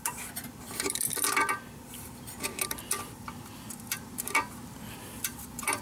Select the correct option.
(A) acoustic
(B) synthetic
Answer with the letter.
B